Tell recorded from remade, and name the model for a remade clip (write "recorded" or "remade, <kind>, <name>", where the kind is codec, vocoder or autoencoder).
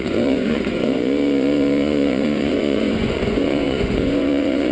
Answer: remade, vocoder, Vocos